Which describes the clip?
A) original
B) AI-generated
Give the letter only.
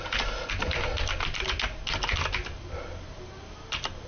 A